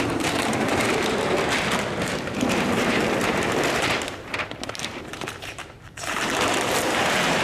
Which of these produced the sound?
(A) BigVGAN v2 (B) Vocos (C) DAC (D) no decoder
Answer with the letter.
A